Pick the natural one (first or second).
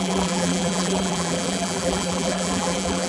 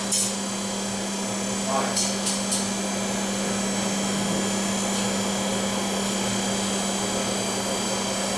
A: second